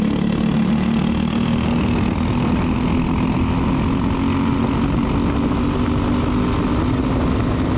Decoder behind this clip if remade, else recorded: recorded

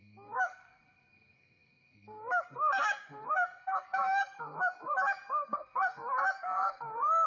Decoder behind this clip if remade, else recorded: remade, codec, SNAC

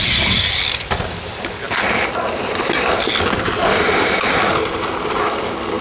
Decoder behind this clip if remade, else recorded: recorded